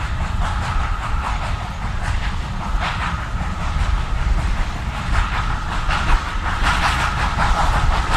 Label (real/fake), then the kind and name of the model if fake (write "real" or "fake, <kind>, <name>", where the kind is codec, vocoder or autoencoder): real